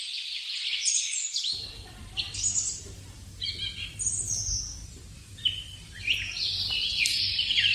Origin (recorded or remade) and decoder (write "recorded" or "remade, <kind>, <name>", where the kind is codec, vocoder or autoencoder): remade, vocoder, BigVGAN v2